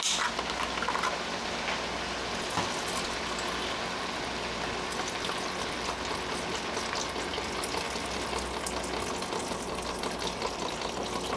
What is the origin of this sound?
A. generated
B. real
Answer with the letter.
B